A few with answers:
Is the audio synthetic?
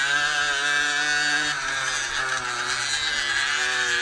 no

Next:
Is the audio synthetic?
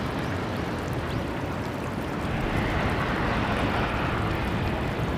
no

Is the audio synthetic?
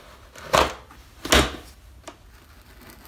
no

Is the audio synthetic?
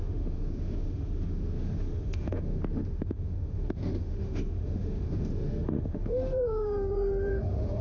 yes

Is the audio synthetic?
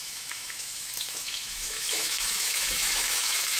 yes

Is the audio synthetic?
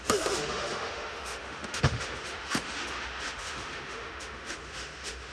yes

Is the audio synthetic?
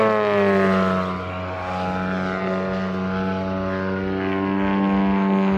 no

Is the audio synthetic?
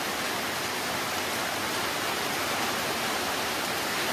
no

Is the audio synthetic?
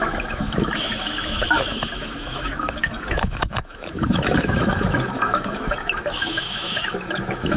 yes